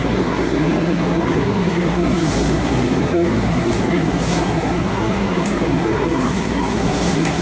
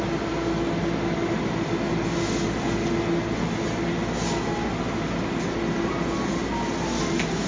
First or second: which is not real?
first